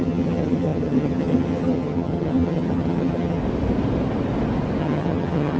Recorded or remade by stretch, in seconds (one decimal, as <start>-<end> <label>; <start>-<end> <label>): 0.0-3.4 remade; 3.4-4.8 recorded; 4.8-5.6 remade